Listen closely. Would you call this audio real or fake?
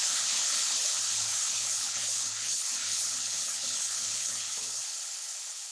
fake